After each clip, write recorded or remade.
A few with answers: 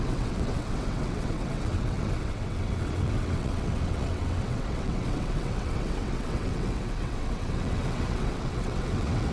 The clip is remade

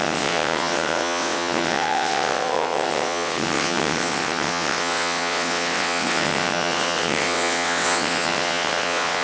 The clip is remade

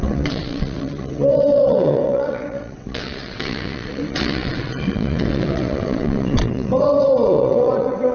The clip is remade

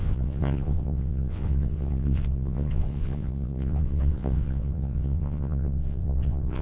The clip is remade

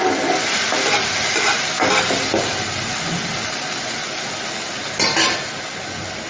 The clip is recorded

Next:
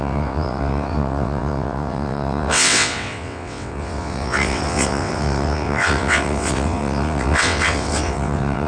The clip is remade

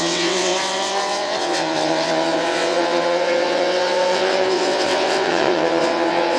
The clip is remade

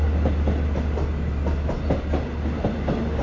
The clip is recorded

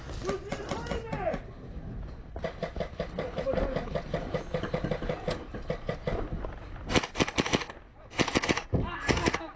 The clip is recorded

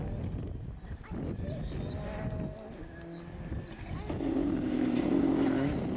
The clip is recorded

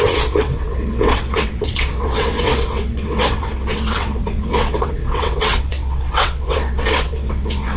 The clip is remade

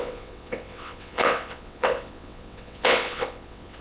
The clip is remade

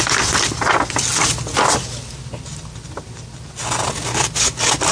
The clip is recorded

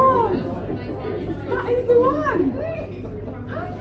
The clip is recorded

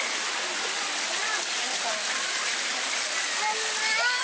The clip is recorded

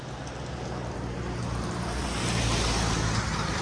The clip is recorded